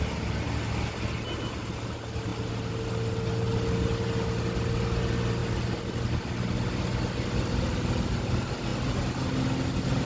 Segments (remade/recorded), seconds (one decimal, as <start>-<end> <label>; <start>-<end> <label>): 0.0-10.1 recorded